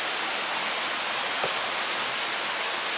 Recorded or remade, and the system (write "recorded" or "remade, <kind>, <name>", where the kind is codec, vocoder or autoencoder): recorded